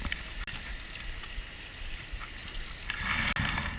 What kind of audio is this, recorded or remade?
recorded